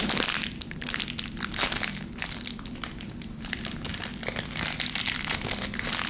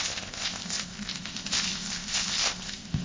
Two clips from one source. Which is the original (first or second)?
first